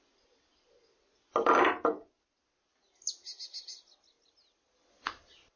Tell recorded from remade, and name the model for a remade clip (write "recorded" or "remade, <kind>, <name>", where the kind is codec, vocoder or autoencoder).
recorded